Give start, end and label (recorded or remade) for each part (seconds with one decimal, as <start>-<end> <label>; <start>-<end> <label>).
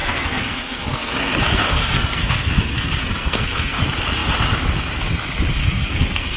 0.0-3.8 remade; 3.8-5.6 recorded; 5.6-6.4 remade